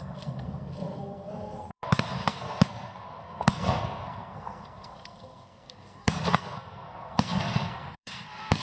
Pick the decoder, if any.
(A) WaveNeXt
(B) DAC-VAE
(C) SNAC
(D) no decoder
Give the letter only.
C